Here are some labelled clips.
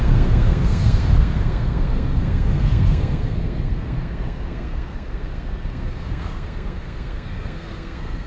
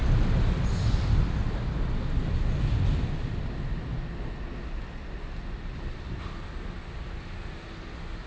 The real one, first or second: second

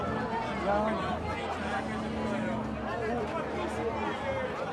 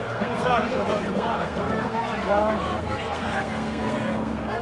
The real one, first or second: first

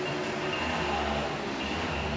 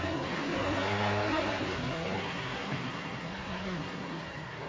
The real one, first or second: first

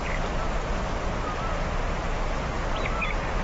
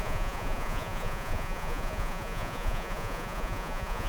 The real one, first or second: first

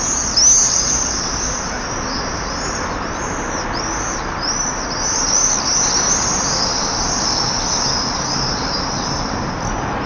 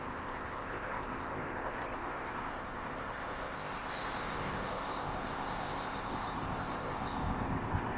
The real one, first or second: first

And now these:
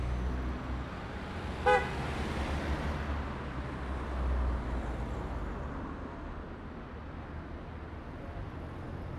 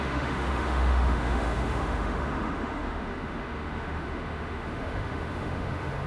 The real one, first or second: first